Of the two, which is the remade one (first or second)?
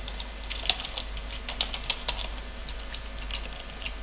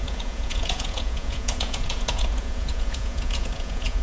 second